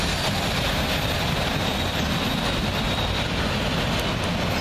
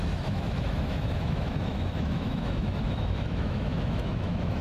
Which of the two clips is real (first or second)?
first